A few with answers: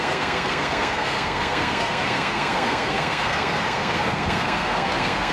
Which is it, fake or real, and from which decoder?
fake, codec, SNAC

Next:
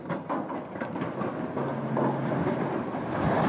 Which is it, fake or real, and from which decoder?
real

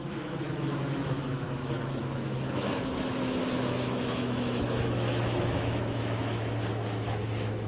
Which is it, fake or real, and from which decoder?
fake, autoencoder, DAC-VAE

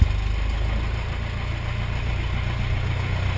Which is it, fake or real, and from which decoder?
real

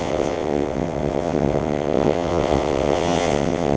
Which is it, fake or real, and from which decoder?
fake, vocoder, WaveNeXt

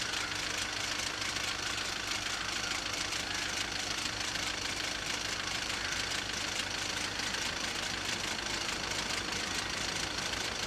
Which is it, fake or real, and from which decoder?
fake, vocoder, BigVGAN v2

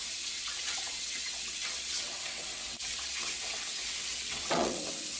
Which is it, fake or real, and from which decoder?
fake, vocoder, WaveNeXt